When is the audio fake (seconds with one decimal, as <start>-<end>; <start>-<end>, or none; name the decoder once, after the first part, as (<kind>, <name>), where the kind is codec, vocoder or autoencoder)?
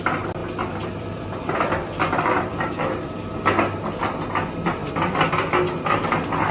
0.4-3.1 (vocoder, BigVGAN v2)